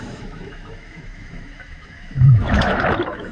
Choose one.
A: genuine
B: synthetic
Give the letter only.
B